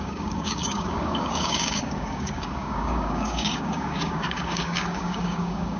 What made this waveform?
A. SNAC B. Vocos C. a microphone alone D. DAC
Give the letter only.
D